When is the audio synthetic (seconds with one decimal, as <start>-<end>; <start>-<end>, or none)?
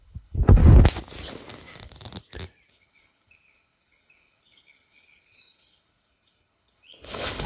0.0-0.6; 2.7-7.5